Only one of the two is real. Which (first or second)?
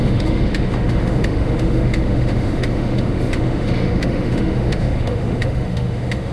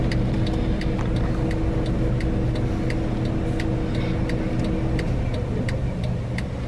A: second